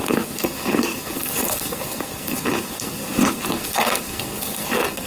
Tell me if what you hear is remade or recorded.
remade